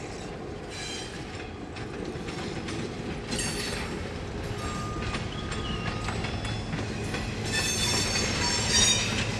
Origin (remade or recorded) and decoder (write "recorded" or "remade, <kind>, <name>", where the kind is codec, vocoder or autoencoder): recorded